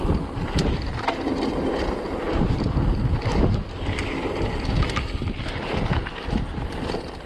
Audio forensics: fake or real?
real